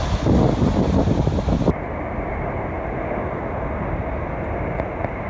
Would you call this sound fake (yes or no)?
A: no